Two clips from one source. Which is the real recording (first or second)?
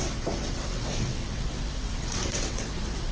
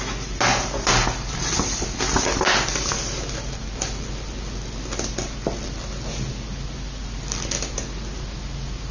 second